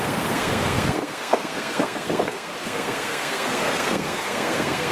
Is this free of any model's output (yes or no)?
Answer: no